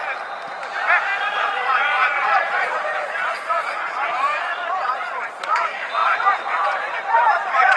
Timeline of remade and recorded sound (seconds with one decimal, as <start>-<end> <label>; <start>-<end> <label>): 0.0-1.2 recorded; 1.2-7.8 remade